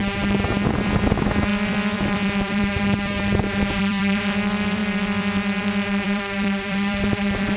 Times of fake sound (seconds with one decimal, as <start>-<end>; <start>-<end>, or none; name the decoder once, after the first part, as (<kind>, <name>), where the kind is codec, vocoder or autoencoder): 0.7-7.6 (vocoder, BigVGAN v2)